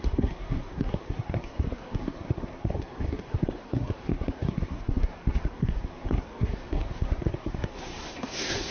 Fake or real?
fake